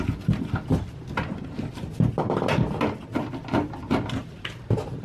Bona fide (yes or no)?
yes